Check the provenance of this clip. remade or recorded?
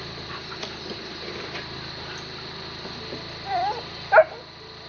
recorded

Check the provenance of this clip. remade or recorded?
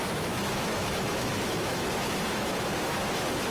remade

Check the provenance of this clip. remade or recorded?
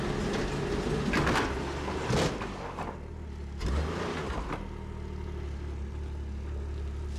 recorded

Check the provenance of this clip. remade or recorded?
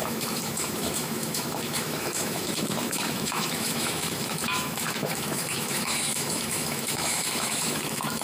remade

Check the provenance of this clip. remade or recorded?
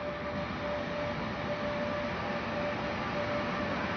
recorded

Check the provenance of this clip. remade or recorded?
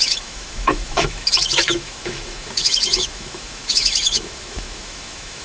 remade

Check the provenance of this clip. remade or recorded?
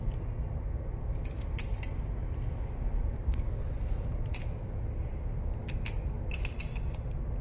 recorded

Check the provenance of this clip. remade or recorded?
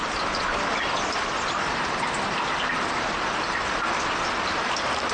recorded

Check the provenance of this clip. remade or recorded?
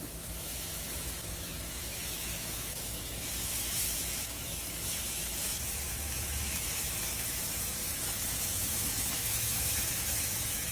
remade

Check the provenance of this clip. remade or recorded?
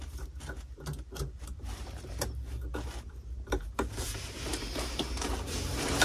remade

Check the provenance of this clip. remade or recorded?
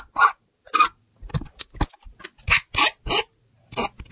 recorded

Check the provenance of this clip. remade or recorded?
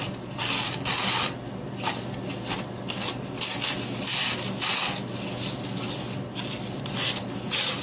recorded